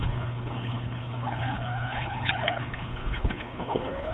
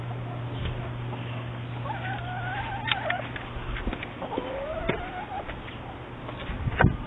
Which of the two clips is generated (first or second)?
first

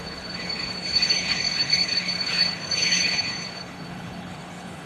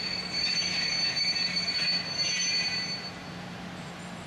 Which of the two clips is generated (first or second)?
first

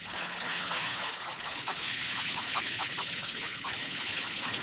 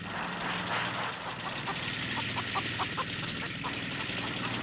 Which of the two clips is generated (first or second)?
first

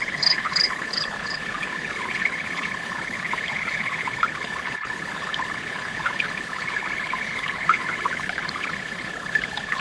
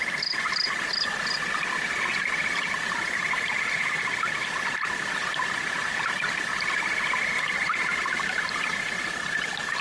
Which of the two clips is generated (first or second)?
first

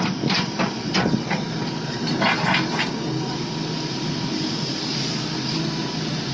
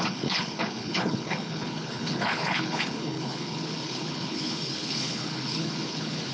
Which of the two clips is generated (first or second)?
second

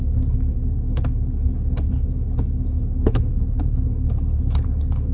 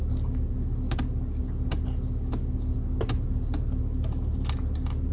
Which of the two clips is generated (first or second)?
first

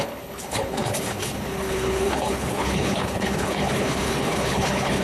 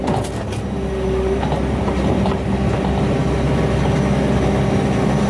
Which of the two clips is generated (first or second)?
first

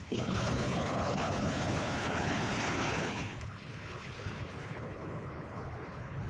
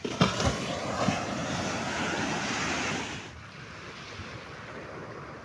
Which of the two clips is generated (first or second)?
first